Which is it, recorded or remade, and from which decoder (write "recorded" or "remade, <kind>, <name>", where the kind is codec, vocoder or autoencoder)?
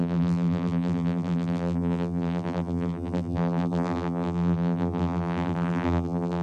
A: remade, vocoder, BigVGAN v2